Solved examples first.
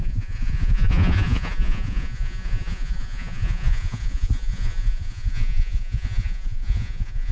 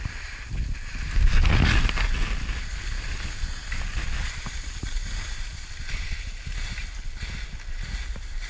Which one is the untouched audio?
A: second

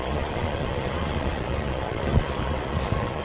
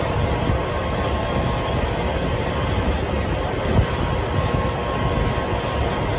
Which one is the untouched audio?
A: second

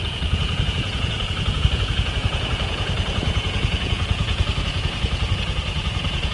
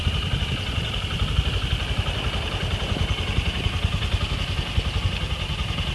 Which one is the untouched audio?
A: second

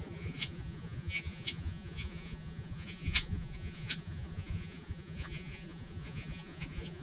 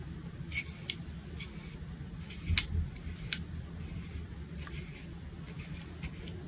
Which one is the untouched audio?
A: second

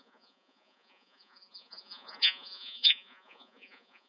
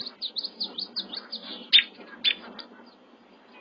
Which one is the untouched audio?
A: second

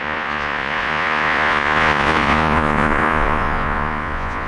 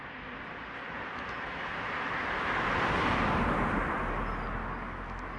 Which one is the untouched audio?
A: second